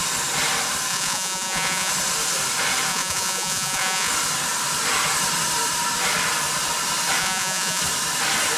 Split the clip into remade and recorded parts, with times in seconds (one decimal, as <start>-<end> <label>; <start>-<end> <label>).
0.0-0.9 recorded; 0.9-1.9 remade; 1.9-2.9 recorded; 2.9-4.1 remade; 4.1-7.2 recorded; 7.2-7.8 remade; 7.8-8.6 recorded